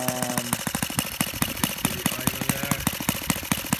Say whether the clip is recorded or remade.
recorded